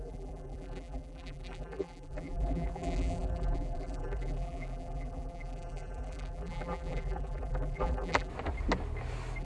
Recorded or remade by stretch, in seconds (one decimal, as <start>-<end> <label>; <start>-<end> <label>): 0.0-8.3 remade; 8.3-9.4 recorded